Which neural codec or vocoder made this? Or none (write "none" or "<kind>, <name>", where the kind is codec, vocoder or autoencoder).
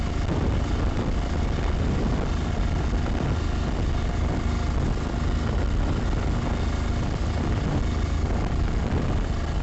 none